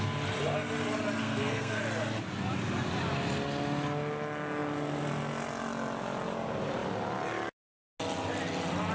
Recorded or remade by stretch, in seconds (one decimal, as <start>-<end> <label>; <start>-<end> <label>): 0.0-1.2 recorded; 1.2-1.8 remade; 1.8-8.9 recorded